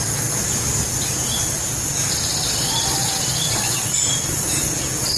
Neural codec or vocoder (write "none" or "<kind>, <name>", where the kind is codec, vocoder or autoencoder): none